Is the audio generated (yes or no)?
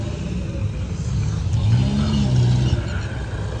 no